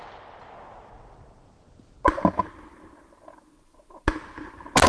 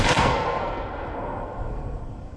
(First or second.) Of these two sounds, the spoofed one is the second